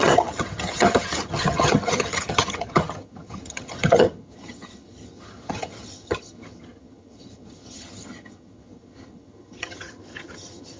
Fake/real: fake